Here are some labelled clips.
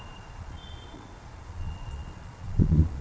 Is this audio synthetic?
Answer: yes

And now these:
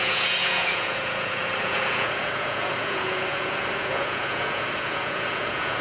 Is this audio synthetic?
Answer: yes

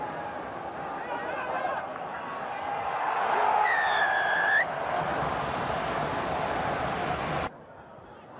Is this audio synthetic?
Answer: no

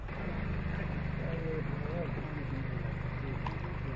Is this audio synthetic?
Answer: no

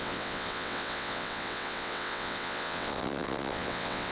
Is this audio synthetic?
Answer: yes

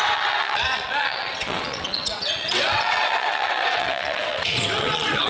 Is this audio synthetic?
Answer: yes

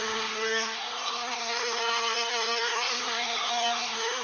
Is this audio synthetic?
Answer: yes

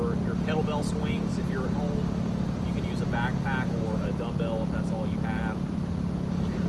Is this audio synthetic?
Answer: no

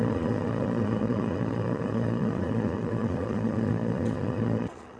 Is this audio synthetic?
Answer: yes